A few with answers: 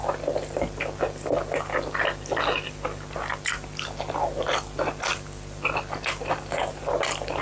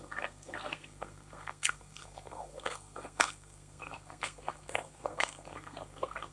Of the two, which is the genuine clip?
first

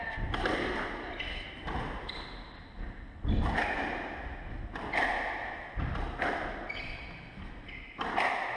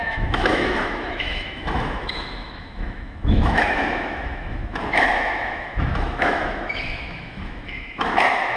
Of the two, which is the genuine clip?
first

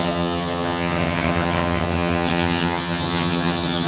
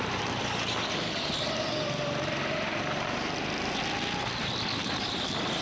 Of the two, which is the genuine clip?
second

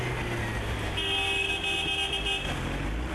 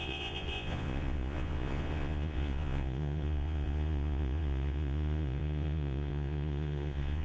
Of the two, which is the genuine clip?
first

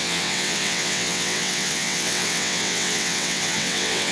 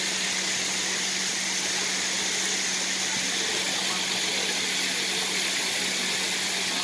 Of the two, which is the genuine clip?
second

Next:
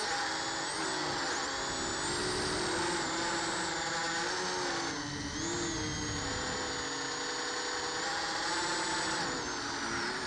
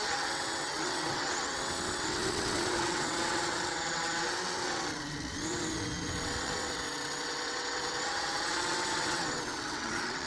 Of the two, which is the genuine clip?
first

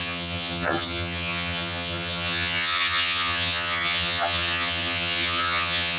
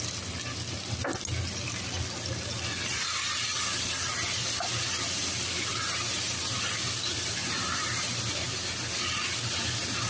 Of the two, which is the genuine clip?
second